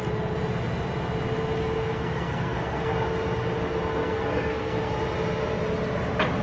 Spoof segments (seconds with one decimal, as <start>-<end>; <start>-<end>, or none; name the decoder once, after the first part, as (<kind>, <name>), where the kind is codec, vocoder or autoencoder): 1.8-2.9 (codec, SNAC); 4.0-4.9